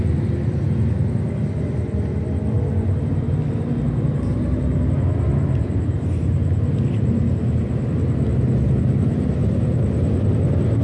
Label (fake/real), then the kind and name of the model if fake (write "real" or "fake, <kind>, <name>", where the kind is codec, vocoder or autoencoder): real